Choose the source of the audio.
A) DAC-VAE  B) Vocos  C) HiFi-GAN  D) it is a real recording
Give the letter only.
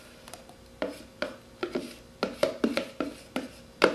D